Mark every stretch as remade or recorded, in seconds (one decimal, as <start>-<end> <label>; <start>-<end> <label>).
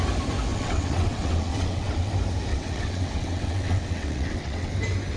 0.0-0.5 recorded; 0.5-2.1 remade; 2.1-2.5 recorded; 2.5-4.7 remade; 4.7-5.2 recorded